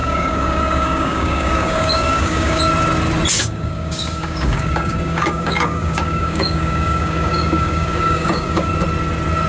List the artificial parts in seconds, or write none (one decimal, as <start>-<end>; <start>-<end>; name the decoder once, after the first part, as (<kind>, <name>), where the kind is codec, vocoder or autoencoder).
0.0-2.6 (codec, DAC); 3.4-8.7